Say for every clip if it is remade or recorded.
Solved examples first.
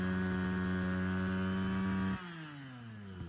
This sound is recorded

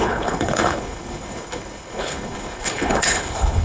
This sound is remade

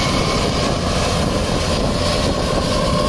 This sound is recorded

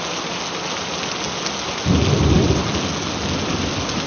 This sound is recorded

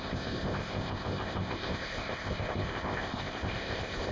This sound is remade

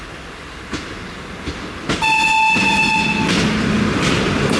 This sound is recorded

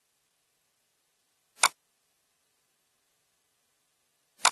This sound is recorded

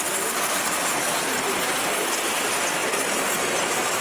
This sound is recorded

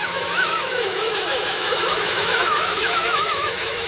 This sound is remade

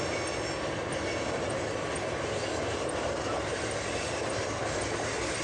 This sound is recorded